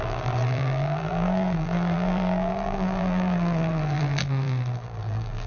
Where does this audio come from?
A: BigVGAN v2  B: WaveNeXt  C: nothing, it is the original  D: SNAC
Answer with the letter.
A